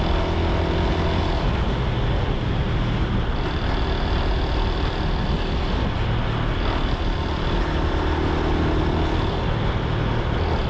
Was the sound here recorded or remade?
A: recorded